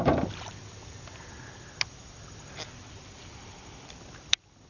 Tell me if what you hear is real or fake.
real